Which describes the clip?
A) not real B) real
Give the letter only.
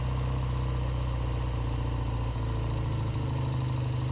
B